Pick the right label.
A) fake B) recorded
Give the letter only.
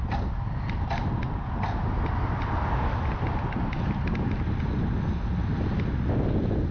B